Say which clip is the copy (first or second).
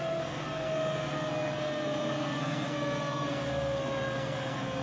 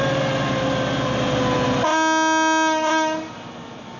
first